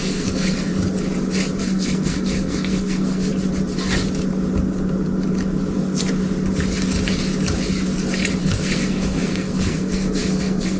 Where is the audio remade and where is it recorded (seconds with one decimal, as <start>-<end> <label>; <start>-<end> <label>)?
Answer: 0.0-0.7 remade; 0.7-1.6 recorded; 1.6-3.3 remade; 3.3-8.4 recorded; 8.4-10.8 remade